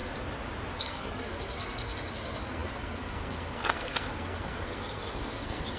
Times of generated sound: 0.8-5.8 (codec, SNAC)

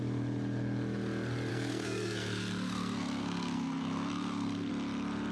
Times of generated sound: 1.5-4.7 (codec, SNAC)

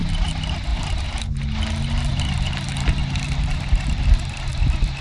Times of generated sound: none

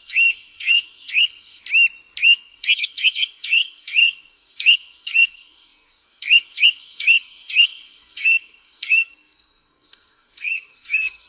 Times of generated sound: 0.0-1.6 (codec, SNAC); 2.2-11.3

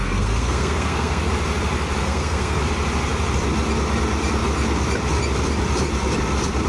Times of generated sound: 0.0-1.3 (codec, SNAC); 2.0-2.6

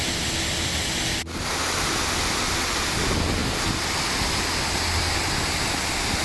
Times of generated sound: none

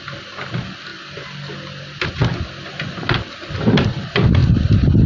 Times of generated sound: none